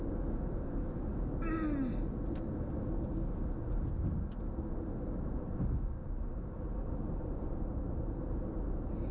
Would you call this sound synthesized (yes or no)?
no